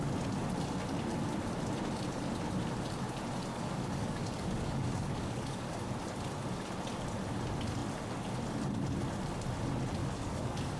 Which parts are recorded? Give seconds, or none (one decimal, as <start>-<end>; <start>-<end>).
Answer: 0.0-3.5; 5.9-10.0